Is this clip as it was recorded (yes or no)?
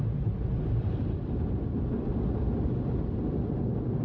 yes